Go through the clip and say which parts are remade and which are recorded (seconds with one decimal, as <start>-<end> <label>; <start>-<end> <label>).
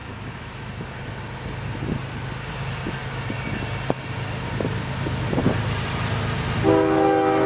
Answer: 0.0-0.7 remade; 0.7-7.5 recorded